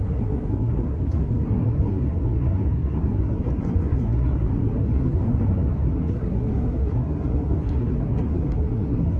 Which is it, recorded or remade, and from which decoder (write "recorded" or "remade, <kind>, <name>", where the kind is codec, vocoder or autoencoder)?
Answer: remade, codec, SNAC